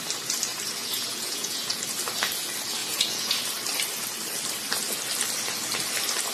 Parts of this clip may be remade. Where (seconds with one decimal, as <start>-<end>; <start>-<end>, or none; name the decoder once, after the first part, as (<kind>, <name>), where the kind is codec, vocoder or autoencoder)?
0.8-1.8 (vocoder, Vocos); 2.8-3.4